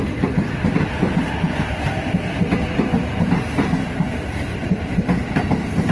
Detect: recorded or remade recorded